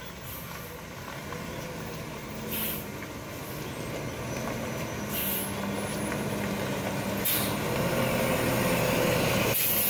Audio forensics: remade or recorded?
recorded